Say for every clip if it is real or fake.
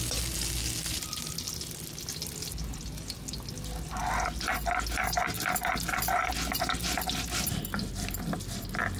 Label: real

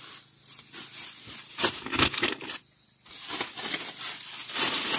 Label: real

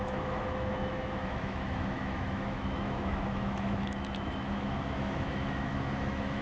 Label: fake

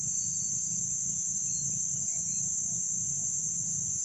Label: real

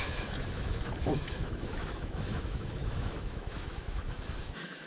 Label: fake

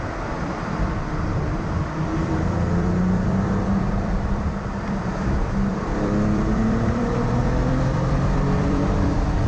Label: fake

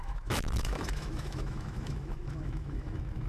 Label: fake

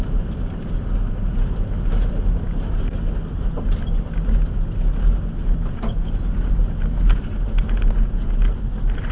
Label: real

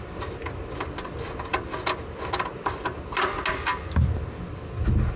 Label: real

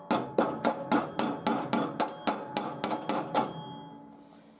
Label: real